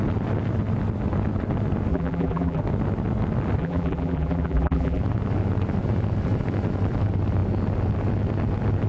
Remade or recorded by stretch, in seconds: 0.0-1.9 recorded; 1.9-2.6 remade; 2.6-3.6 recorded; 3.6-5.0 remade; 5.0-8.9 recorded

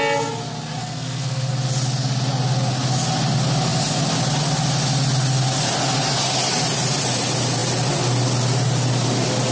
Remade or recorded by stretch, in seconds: 0.0-0.8 recorded; 0.8-1.5 remade; 1.5-9.5 recorded

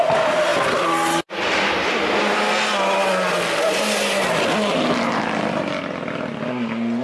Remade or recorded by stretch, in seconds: 0.0-7.0 recorded

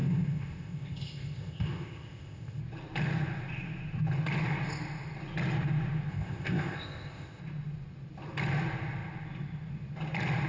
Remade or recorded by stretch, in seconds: 0.0-2.6 remade; 2.6-6.1 recorded; 6.1-7.4 remade; 7.4-10.5 recorded

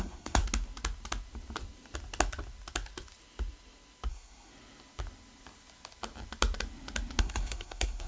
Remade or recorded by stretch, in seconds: 0.0-0.4 remade; 0.4-4.1 recorded; 4.1-4.5 remade; 4.5-7.2 recorded; 7.2-8.1 remade

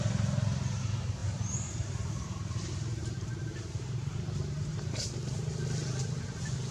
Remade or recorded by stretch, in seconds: 0.0-1.2 recorded; 1.2-5.2 remade; 5.2-6.7 recorded